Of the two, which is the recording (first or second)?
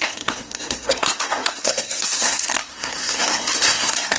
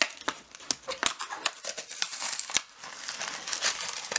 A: second